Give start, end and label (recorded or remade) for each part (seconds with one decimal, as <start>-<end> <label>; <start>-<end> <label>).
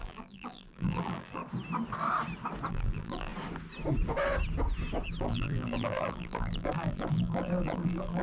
0.0-1.4 remade; 1.4-2.7 recorded; 2.7-3.3 remade; 3.3-5.2 recorded; 5.2-8.2 remade